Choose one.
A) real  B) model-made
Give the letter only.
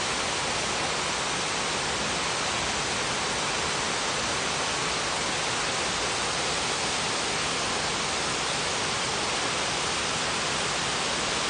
A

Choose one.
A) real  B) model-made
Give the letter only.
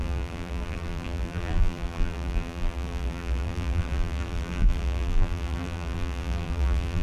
B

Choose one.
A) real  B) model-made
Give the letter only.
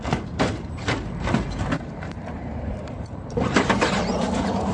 B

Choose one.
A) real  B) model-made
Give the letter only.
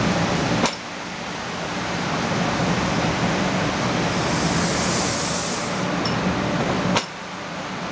A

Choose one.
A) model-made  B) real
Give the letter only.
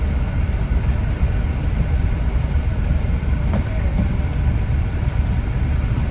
A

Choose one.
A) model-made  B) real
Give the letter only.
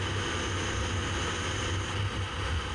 B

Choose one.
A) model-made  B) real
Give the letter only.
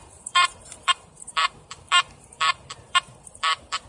A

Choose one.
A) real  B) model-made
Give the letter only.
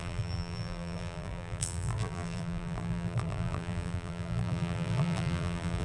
B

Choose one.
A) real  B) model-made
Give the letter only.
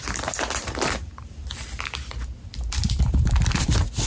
B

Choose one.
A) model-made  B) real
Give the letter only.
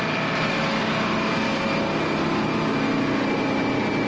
B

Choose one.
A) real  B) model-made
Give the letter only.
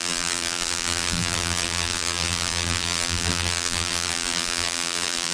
B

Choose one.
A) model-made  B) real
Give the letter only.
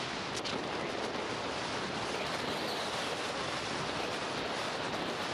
B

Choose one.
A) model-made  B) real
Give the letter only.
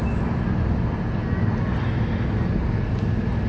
B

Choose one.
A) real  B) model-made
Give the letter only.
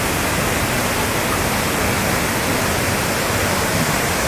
A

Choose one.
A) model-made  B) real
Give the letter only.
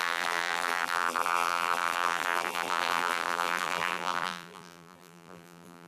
A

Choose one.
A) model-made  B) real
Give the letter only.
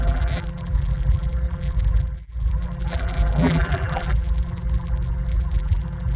A